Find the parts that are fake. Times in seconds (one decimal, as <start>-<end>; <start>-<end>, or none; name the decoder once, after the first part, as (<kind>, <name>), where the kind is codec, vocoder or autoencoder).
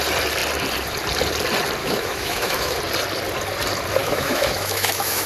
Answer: 1.8-2.8 (autoencoder, DAC-VAE); 4.0-5.3